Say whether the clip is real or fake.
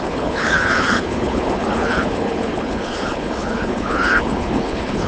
fake